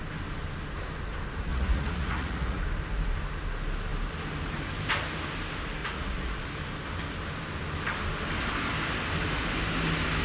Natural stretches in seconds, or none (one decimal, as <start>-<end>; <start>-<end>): 0.0-1.5; 2.6-5.8; 6.4-10.2

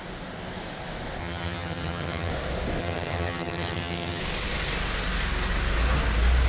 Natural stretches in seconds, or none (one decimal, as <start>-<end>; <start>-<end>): 0.0-1.2; 2.3-2.8; 4.2-6.5

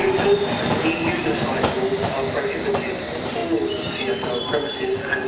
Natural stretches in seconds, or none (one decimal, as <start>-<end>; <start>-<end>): 0.0-5.3

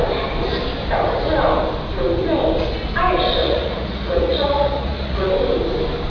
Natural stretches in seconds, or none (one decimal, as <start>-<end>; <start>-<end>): 0.0-3.4; 5.3-6.1

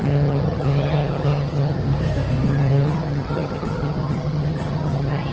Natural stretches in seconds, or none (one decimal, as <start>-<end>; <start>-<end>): 1.8-2.5

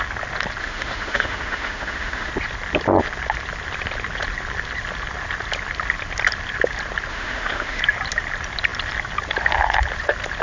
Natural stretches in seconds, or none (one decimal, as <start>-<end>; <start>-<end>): 0.0-0.6; 2.3-7.1; 7.8-10.4

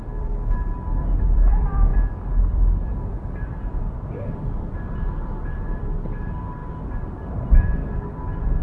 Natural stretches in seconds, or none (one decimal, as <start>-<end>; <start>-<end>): 7.8-8.6

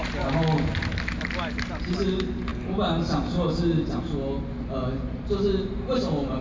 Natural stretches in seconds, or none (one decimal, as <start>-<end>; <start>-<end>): 0.0-6.4